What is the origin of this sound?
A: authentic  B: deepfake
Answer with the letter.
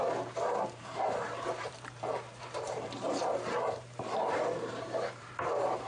B